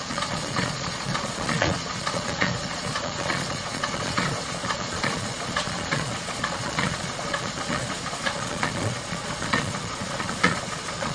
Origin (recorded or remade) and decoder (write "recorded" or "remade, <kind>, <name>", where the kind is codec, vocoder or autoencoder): remade, vocoder, Vocos